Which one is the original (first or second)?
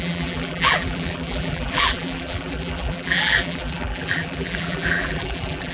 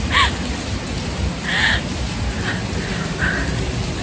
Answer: second